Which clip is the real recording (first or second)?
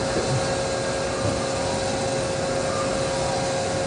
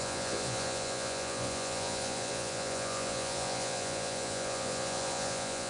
first